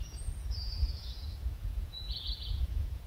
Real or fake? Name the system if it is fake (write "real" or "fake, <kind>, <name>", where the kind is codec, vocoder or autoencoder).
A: fake, vocoder, Vocos